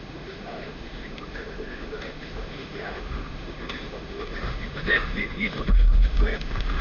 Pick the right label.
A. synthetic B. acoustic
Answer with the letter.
A